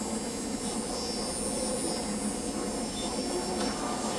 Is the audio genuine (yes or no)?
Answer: yes